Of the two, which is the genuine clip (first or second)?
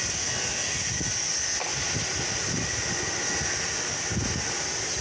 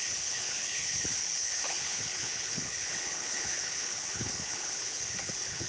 first